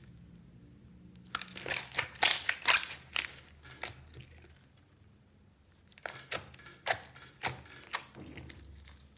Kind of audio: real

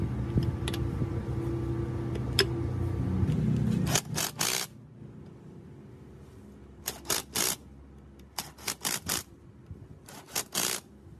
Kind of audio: real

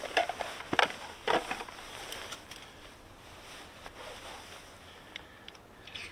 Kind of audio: real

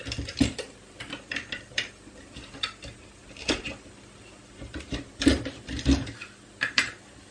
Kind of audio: fake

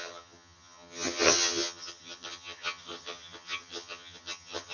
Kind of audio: fake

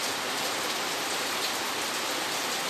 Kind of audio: real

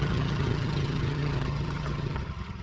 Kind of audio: fake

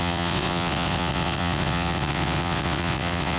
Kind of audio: fake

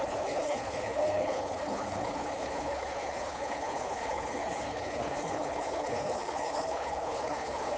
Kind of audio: fake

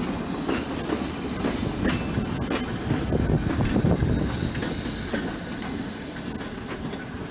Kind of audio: real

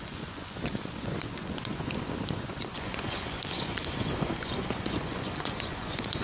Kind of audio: fake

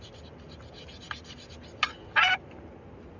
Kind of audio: real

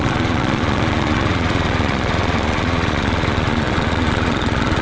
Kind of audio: fake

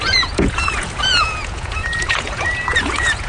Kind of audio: fake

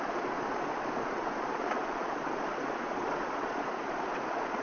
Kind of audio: fake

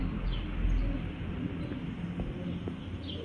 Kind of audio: real